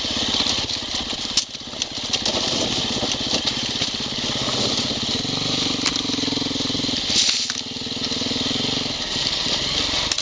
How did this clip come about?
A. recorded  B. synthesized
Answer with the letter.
A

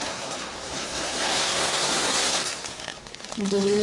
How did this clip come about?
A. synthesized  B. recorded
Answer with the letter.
A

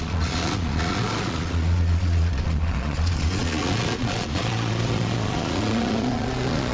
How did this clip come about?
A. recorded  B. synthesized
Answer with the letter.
B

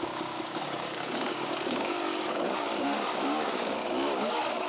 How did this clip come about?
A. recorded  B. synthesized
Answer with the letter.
B